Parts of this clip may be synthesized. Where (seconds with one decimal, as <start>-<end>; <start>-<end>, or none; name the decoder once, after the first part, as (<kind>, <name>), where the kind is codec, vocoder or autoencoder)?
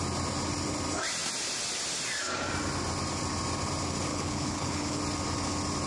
4.1-5.0 (codec, HILCodec)